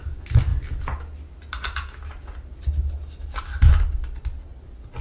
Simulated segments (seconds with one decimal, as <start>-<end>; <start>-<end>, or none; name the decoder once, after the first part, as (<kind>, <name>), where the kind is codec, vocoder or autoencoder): none